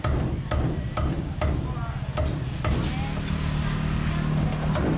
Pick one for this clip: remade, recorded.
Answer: recorded